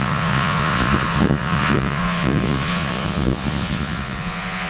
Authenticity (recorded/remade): remade